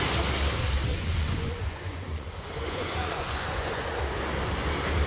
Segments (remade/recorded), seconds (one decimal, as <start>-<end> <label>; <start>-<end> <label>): 0.0-0.9 recorded; 0.9-4.0 remade; 4.0-5.1 recorded